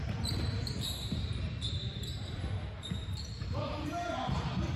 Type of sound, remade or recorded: remade